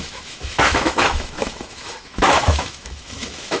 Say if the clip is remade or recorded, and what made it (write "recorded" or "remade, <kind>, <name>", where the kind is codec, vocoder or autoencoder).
remade, autoencoder, DAC-VAE